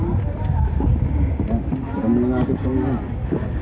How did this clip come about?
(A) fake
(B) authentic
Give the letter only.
B